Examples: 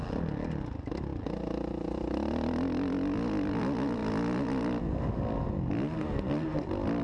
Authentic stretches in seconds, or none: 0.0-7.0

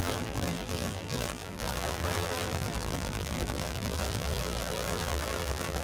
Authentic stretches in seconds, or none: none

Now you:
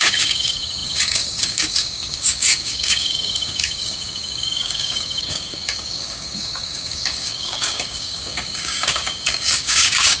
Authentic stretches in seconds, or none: none